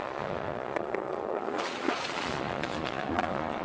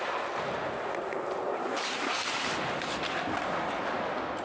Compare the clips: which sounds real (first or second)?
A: second